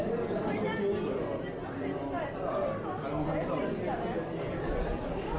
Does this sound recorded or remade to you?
recorded